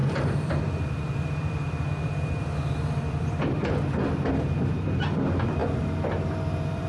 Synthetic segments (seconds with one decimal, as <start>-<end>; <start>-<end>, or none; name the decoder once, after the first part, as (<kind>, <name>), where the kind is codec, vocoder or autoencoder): 0.0-6.9 (vocoder, BigVGAN v2)